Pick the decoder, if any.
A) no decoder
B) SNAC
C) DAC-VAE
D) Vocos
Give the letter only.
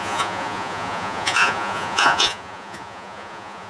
D